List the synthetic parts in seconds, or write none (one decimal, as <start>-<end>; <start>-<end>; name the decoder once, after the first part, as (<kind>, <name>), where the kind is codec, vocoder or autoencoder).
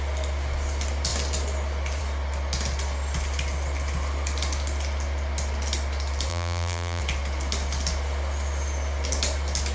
6.3-7.0 (vocoder, BigVGAN v2)